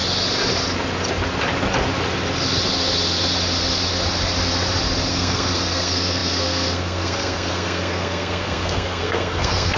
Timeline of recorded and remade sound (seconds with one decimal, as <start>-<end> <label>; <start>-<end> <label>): 0.0-5.1 recorded; 5.1-9.8 remade